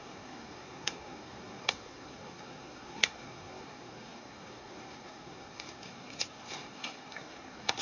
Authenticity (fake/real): fake